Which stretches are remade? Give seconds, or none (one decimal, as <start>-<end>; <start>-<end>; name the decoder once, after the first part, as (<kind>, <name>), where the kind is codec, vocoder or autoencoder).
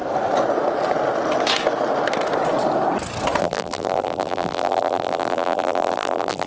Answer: 3.4-6.5 (vocoder, BigVGAN v2)